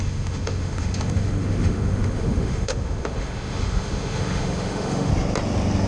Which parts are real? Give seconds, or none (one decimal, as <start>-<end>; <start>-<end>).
5.1-5.9

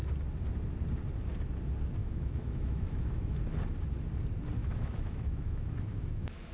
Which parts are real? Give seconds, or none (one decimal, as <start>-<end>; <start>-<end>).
0.0-2.0; 3.4-4.6

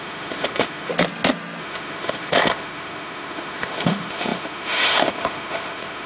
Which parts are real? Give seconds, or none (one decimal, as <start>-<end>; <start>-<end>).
0.9-1.6

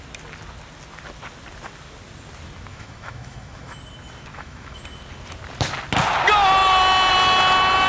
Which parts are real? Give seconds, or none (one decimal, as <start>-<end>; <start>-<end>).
0.0-2.7; 3.8-4.3; 4.8-7.9

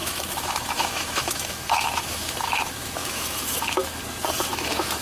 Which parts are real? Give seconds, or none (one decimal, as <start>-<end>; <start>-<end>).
4.0-4.5

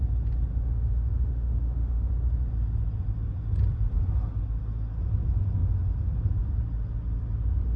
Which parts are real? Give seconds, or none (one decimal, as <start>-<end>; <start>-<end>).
0.0-0.5; 2.1-7.8

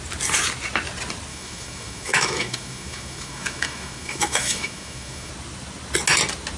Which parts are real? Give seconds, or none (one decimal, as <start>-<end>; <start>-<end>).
0.0-1.3; 5.3-6.6